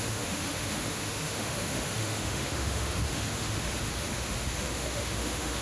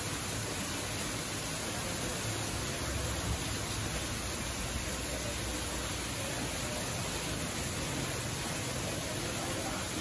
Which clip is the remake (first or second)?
first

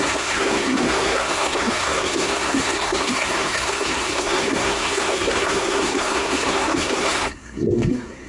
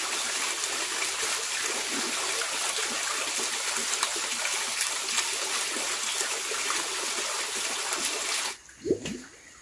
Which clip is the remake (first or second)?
first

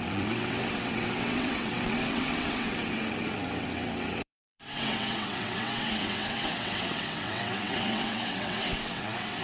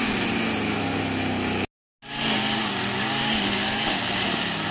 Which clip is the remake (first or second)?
first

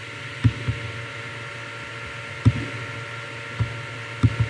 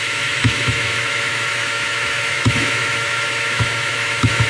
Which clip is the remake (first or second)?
second